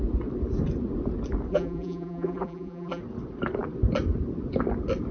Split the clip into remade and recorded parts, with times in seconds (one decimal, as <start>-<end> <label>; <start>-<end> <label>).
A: 0.0-1.5 recorded; 1.5-3.0 remade; 3.0-5.1 recorded